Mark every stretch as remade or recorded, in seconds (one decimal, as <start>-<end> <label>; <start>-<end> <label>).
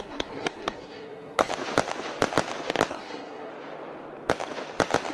0.0-1.5 remade; 1.5-2.9 recorded; 2.9-3.5 remade; 3.5-5.1 recorded